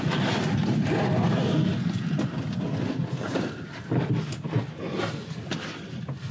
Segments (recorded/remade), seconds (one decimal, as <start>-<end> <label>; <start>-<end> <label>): 0.0-6.3 recorded